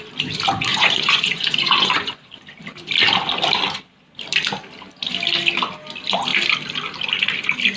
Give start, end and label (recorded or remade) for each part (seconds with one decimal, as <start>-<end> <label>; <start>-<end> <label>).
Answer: 0.0-0.7 recorded; 0.7-2.3 remade; 2.3-7.8 recorded